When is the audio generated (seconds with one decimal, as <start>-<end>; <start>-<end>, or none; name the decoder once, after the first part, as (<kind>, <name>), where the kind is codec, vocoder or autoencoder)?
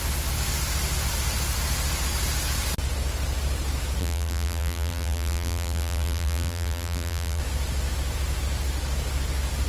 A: 4.0-7.4 (vocoder, BigVGAN v2)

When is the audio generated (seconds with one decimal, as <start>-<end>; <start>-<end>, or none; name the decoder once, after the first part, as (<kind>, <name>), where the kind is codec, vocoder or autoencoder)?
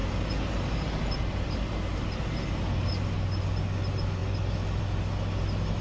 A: none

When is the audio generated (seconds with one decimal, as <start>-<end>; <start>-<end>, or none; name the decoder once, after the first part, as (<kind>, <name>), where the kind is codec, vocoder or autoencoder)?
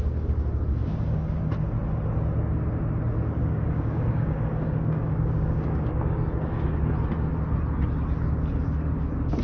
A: 0.8-1.4 (codec, DAC); 3.4-6.7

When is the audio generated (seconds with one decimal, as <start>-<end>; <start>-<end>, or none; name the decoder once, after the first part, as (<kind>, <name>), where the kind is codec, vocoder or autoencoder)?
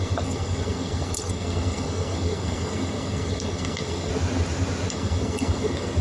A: 0.0-4.1 (codec, SNAC); 4.9-6.0